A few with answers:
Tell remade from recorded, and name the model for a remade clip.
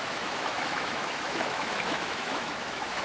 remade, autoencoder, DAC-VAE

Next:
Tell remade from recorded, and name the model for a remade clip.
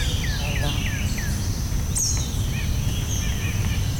recorded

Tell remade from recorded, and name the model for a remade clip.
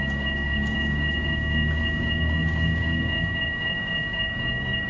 remade, codec, DAC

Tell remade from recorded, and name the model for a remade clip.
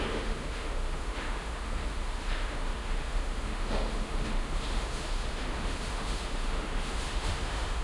remade, autoencoder, DAC-VAE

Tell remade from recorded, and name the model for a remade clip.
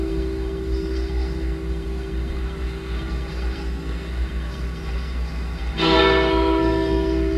remade, codec, SNAC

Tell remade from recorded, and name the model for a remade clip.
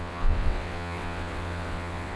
remade, vocoder, WaveNeXt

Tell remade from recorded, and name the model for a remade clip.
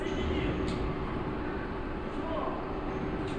recorded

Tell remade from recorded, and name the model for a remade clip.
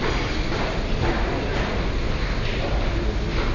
recorded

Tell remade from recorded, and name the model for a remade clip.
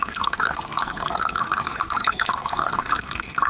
remade, codec, SNAC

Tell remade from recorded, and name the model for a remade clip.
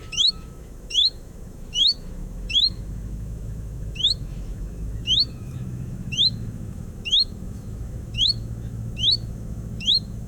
remade, autoencoder, DAC-VAE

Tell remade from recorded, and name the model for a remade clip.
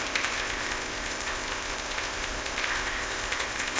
remade, codec, ZipCodec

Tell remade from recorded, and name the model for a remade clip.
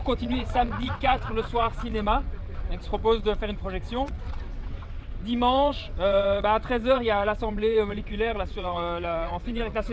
remade, vocoder, WaveNeXt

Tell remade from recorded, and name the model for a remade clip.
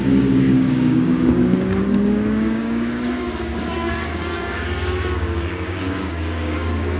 remade, codec, DAC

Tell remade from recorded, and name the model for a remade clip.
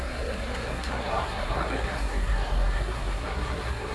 remade, codec, SNAC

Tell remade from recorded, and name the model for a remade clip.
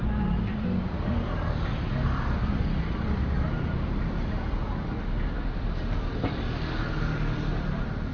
recorded